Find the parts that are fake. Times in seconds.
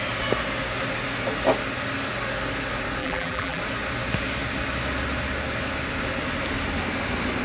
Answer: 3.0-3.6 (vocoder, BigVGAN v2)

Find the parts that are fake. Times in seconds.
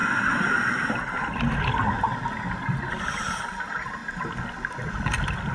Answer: none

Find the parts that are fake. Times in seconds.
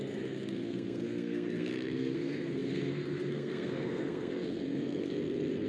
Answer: 0.0-5.7 (codec, SNAC)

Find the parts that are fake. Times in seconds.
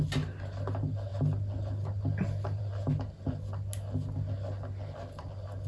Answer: none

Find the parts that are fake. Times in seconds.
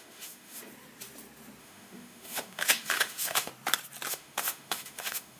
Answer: 0.0-0.6 (autoencoder, DAC-VAE); 1.6-3.5; 4.1-5.4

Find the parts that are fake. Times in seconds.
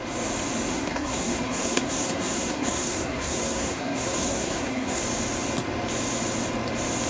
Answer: 0.7-5.0 (codec, SNAC)